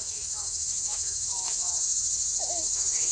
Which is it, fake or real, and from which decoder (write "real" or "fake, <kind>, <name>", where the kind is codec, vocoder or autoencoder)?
fake, autoencoder, DAC-VAE